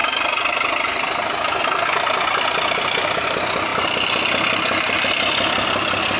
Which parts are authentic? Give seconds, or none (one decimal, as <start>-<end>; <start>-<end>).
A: 0.0-6.2